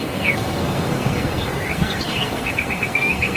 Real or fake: fake